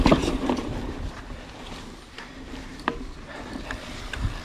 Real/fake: fake